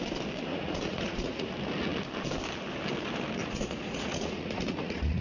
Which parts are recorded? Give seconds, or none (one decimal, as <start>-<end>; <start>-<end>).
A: 0.0-0.5; 1.5-3.4